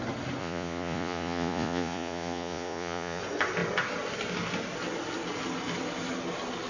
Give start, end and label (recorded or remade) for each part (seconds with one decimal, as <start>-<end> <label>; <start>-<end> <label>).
0.0-0.4 recorded; 0.4-3.2 remade; 3.2-6.7 recorded